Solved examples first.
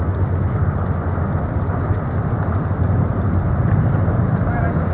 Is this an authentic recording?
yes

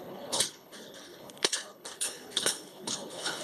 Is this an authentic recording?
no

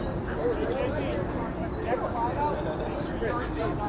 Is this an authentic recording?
yes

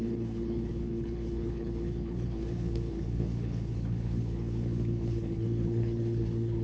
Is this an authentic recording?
no